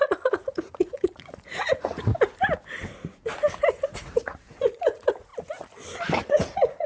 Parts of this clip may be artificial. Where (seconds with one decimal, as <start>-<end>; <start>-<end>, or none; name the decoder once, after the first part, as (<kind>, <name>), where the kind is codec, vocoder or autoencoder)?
0.0-2.1 (vocoder, Vocos); 3.7-5.3; 6.2-6.9